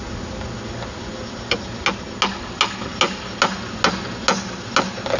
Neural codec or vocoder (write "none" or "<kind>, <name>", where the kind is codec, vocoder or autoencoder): none